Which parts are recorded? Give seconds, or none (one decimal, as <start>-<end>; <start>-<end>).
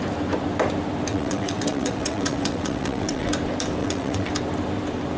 0.0-1.1; 3.3-3.8; 4.3-5.2